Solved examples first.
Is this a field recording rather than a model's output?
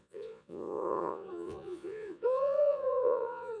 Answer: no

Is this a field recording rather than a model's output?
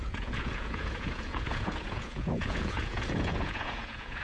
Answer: no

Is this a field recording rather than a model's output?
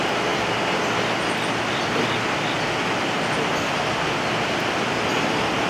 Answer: yes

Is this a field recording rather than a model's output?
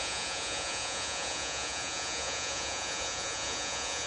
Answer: no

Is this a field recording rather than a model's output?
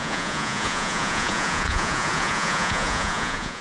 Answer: no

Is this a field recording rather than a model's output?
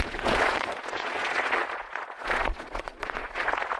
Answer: no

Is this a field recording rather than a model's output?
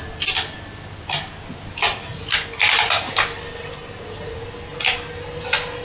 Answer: yes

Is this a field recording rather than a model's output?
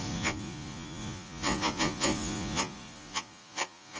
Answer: no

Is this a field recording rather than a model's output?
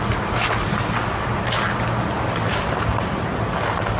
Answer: yes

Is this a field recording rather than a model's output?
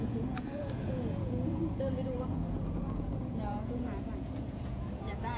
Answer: no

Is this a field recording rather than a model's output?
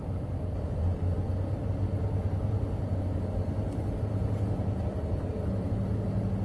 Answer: yes